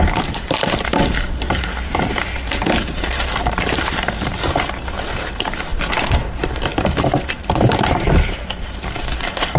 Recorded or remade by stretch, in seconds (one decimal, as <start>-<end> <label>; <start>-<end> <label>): 0.0-6.7 remade; 6.7-7.2 recorded; 7.2-9.6 remade